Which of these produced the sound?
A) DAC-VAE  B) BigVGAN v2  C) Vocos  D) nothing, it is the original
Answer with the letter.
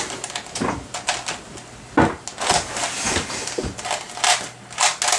D